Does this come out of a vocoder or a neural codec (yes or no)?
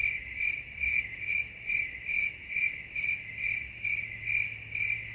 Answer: no